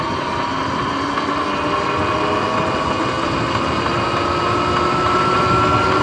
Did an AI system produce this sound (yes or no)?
no